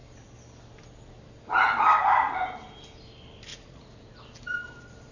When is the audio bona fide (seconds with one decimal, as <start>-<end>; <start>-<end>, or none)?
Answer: 0.0-3.5; 4.1-5.1